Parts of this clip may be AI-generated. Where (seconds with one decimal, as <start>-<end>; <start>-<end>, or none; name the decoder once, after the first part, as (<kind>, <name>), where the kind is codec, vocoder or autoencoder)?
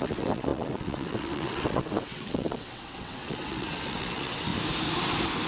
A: 0.0-4.5 (vocoder, WaveNeXt)